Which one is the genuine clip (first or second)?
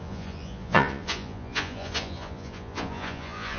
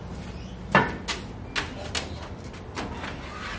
second